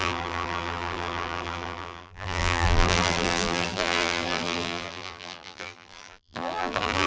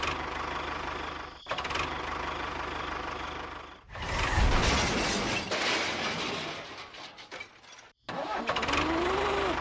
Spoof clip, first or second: first